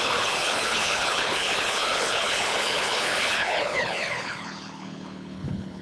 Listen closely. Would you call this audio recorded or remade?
remade